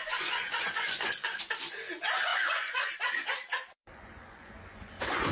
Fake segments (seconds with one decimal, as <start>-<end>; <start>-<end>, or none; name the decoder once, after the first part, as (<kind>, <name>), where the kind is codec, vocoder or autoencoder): 0.0-1.4 (vocoder, Vocos); 2.3-2.9; 3.8-5.3